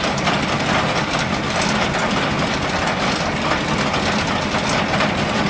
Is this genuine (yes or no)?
yes